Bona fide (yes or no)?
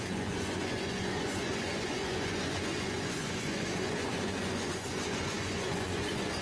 no